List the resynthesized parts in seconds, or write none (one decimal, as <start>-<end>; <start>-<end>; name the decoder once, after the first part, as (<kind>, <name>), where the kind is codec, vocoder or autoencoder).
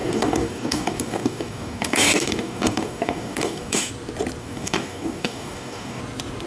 0.0-3.9 (codec, DAC); 4.4-6.0